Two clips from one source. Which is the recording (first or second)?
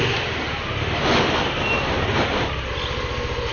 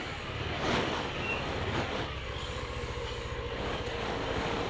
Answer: first